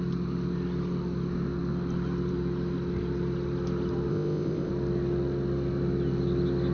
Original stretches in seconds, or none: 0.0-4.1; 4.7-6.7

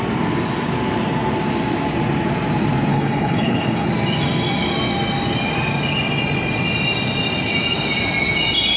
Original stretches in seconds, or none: 0.0-2.9; 3.9-8.8

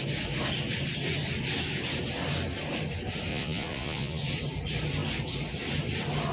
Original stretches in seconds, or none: 0.0-3.3; 4.2-6.3

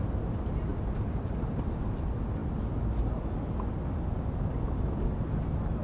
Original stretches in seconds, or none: 0.0-0.7; 1.5-5.8

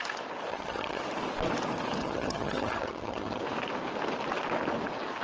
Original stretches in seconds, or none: 0.0-0.5; 1.0-2.0; 3.4-5.2

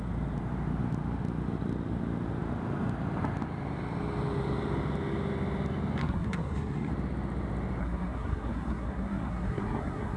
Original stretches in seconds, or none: 0.0-6.0; 6.9-7.8

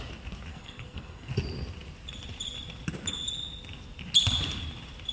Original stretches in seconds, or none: 0.0-0.5; 1.3-5.1

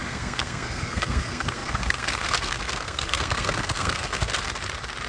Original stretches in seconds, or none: 4.3-5.1